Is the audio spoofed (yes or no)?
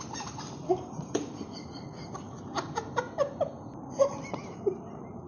yes